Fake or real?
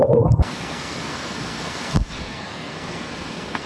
fake